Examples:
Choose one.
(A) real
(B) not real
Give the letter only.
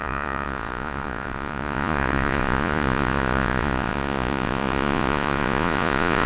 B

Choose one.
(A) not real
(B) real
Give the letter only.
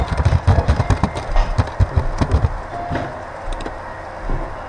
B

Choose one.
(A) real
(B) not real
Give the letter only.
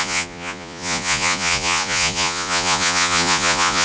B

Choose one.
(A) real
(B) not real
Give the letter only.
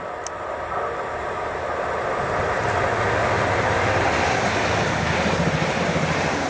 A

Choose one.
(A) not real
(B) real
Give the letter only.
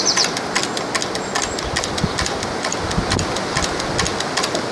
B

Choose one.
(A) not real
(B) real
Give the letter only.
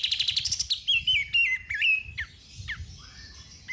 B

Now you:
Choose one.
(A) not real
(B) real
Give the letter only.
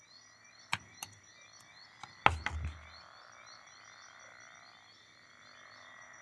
B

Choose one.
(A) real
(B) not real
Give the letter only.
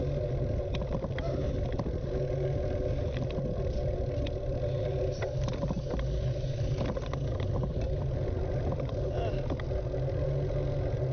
A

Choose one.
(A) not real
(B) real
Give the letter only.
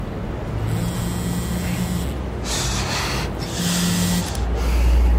B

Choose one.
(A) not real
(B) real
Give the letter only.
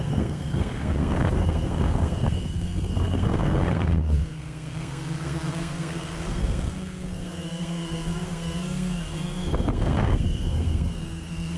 A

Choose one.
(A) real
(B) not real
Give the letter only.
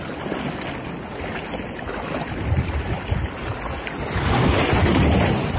A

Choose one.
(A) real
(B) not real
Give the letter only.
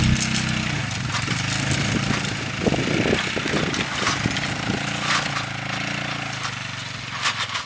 A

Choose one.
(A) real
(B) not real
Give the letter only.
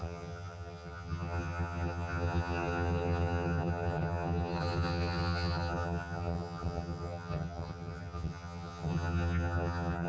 B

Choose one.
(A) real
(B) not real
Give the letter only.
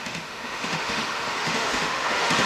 B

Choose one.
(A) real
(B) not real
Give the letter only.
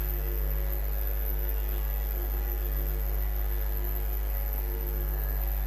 B